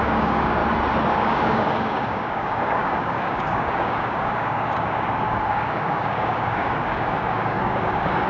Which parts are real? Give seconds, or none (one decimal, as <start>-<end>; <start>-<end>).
0.6-1.1